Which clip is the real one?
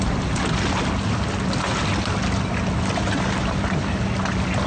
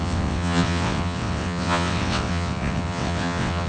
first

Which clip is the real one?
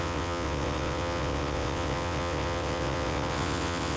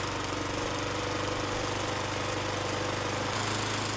second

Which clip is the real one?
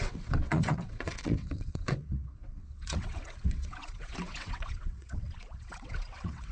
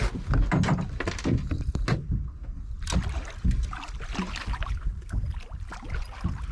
second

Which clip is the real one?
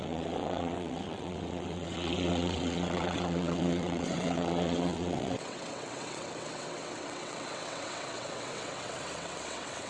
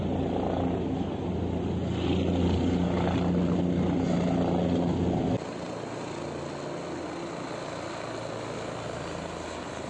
second